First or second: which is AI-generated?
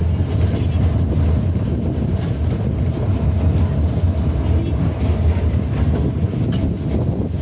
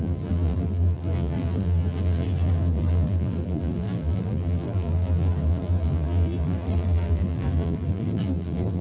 second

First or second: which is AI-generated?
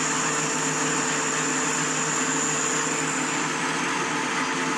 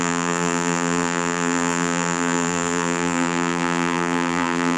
second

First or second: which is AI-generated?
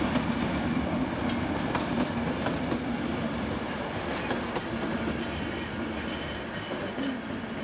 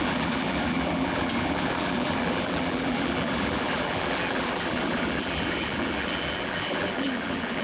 second